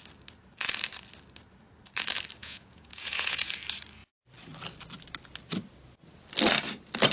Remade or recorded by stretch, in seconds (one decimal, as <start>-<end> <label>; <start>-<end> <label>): 0.0-2.4 recorded; 2.4-3.5 remade; 3.5-7.1 recorded